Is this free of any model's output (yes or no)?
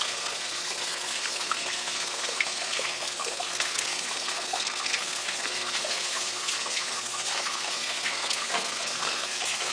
no